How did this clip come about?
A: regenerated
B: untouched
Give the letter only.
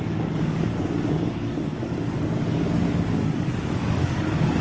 A